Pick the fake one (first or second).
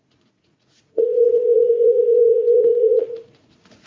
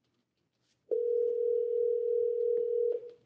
first